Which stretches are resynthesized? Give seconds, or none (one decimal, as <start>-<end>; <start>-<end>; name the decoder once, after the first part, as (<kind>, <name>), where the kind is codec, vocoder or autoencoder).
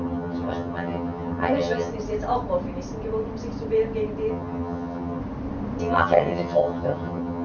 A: 0.0-1.9 (vocoder, HiFi-GAN); 4.3-5.2; 5.8-7.4